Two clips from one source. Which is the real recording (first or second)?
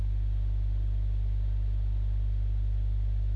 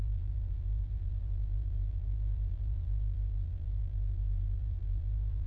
first